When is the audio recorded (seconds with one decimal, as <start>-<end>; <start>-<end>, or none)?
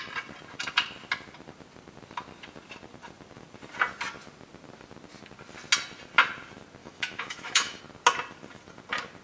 0.0-6.8; 7.8-9.2